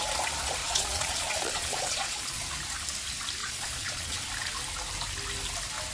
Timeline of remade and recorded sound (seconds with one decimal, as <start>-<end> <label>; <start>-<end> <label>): 0.0-0.6 recorded; 0.6-2.4 remade; 2.4-3.4 recorded; 3.4-4.3 remade; 4.3-5.9 recorded